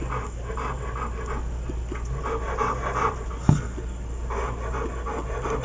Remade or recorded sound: recorded